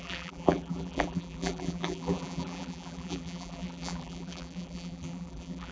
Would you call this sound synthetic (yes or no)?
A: yes